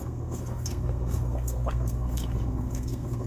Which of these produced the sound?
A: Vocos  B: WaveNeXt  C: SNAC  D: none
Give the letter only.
C